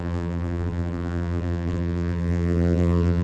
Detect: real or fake fake